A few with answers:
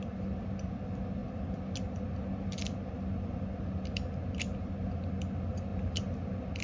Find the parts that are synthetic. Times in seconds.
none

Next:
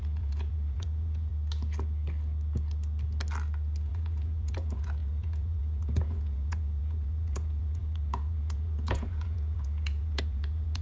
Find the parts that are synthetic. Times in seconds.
0.0-1.3; 3.9-10.8